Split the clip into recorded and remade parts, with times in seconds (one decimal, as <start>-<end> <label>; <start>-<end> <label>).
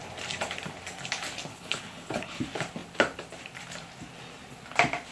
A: 0.0-1.5 recorded; 1.5-2.4 remade; 2.4-5.1 recorded